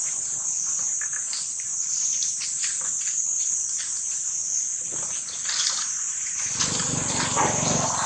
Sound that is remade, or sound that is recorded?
recorded